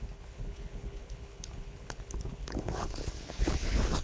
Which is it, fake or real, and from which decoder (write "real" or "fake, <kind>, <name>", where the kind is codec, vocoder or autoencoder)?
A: fake, codec, HILCodec